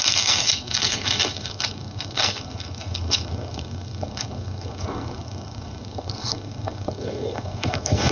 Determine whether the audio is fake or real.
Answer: fake